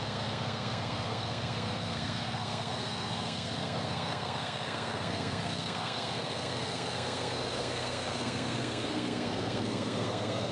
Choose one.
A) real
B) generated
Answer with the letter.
B